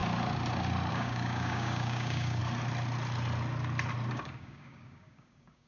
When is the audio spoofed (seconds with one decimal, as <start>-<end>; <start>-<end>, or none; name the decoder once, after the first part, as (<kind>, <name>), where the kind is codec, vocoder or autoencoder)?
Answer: 0.9-2.4 (codec, DAC); 4.1-5.7